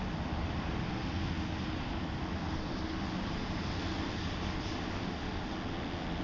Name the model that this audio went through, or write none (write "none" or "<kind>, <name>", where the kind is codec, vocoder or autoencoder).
none